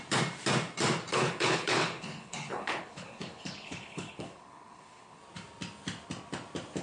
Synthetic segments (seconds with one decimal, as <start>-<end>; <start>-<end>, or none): 1.1-5.2